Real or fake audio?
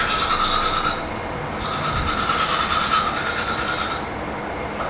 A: real